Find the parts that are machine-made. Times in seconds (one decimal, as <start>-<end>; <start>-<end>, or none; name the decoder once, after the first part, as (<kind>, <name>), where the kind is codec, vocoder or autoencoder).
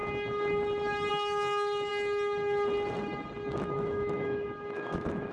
1.1-1.9 (autoencoder, DAC-VAE); 3.7-5.3